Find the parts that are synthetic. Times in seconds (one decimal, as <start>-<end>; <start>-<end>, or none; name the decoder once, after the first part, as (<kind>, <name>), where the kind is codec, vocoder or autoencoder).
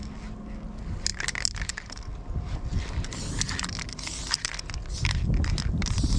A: none